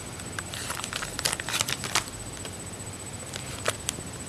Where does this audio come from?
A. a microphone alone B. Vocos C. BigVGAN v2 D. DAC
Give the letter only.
C